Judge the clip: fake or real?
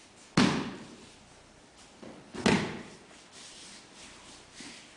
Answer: real